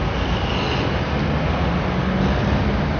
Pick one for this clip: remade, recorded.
recorded